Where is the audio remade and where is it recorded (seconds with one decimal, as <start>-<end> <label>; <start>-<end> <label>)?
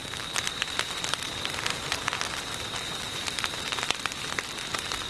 0.0-5.1 recorded